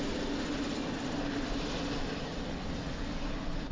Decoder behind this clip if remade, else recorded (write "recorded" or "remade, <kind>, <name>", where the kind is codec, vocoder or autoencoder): recorded